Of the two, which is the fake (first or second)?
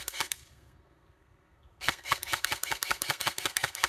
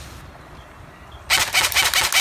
first